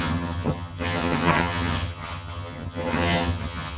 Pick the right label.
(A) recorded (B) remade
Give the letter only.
B